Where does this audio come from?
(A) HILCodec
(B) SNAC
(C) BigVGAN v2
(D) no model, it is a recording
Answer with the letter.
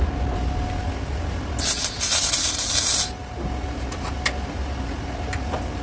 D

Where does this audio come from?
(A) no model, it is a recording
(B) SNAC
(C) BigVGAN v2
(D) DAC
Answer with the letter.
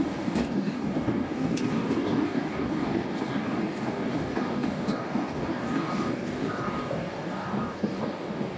D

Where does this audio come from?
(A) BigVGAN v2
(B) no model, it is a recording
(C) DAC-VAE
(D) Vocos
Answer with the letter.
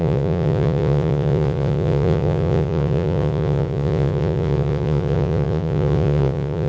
D